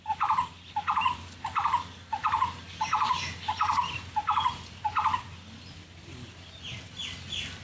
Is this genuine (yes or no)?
yes